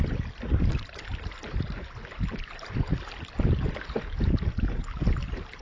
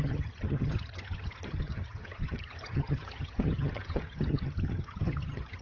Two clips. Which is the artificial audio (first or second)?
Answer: second